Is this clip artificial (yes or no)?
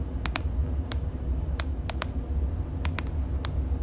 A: no